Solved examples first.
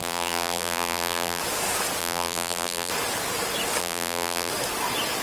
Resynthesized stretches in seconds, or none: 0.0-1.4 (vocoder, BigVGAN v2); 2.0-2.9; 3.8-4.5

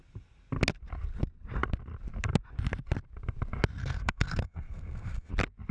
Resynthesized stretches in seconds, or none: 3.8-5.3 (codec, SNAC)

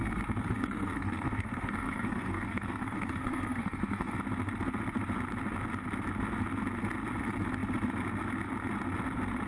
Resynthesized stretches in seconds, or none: 0.4-4.2 (codec, SNAC)

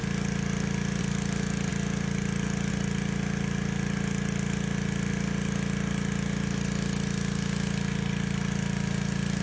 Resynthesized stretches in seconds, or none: none

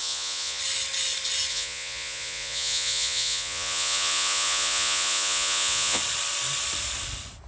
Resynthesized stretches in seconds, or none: 0.0-0.6 (vocoder, Vocos); 1.5-6.0

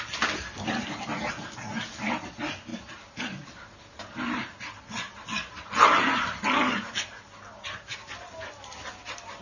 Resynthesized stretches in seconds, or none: none